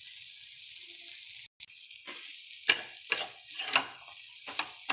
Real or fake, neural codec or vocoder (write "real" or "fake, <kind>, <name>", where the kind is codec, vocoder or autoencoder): real